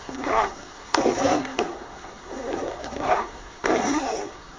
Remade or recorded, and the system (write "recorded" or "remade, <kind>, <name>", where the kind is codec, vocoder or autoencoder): remade, codec, SNAC